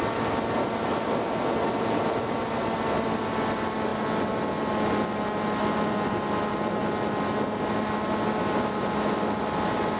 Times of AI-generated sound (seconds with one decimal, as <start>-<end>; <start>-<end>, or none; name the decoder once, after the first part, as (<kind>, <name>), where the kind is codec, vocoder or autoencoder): none